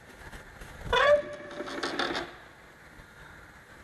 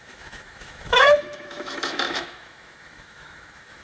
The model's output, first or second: second